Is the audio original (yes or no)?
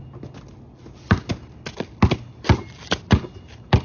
yes